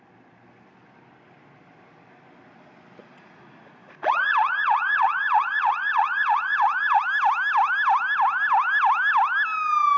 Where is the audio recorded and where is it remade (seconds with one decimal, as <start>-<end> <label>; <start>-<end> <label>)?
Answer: 0.0-3.0 recorded; 3.0-7.0 remade; 7.0-10.0 recorded